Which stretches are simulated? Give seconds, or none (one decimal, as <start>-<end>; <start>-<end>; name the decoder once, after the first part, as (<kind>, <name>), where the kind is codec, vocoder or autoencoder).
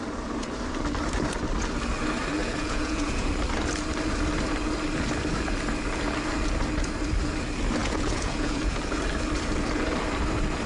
2.4-3.3 (vocoder, Vocos); 7.8-8.8